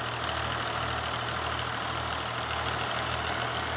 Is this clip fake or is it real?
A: real